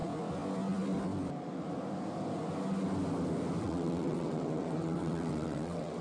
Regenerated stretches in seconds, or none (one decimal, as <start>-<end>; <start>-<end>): 3.6-6.0